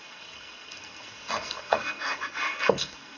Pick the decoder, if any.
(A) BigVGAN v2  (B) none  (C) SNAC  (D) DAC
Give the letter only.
C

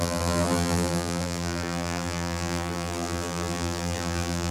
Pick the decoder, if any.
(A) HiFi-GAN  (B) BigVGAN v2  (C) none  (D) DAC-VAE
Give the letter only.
B